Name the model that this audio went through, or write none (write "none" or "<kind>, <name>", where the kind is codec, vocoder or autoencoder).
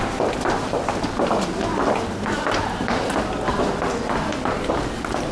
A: none